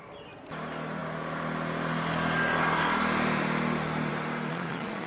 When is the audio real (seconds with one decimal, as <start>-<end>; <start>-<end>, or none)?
0.0-4.5